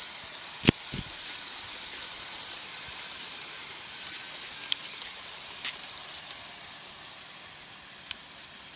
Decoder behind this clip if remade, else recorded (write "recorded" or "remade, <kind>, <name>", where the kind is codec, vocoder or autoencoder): remade, vocoder, BigVGAN v2